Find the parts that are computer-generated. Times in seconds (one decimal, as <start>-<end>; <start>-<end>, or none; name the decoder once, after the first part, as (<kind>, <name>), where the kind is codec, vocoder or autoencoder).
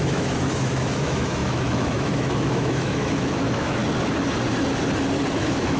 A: 0.0-3.8 (autoencoder, DAC-VAE); 5.3-5.8